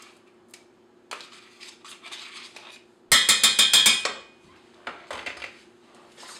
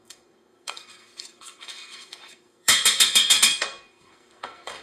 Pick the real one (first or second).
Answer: first